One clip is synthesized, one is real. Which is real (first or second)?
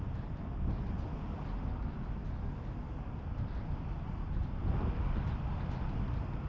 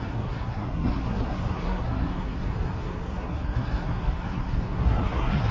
first